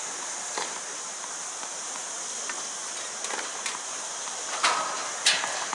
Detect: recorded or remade remade